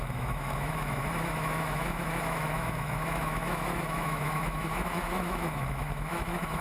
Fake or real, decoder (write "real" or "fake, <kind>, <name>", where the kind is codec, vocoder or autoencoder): fake, autoencoder, DAC-VAE